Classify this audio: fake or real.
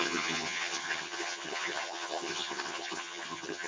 fake